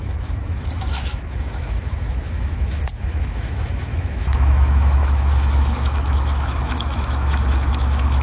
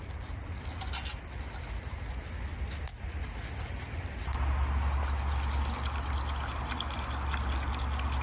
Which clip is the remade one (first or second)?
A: first